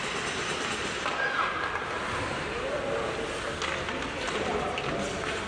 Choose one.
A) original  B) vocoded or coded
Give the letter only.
A